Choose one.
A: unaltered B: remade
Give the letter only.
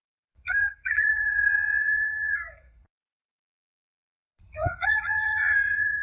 B